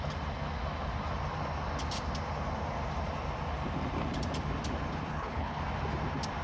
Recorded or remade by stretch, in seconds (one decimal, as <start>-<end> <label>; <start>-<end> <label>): 0.0-5.1 recorded; 5.1-5.6 remade; 5.6-6.4 recorded